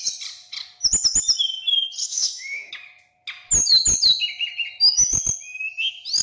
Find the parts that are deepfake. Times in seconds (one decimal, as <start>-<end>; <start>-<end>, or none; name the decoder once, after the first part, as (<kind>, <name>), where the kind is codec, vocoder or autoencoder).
2.0-2.7 (autoencoder, DAC-VAE)